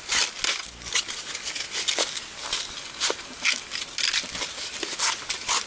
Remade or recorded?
recorded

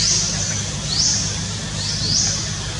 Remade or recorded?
recorded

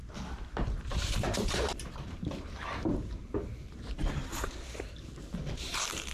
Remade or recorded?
remade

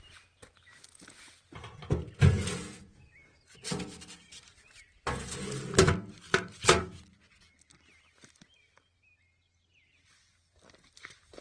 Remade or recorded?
recorded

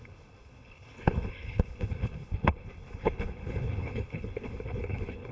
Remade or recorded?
remade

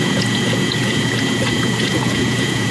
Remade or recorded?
remade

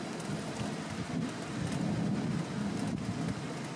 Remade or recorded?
recorded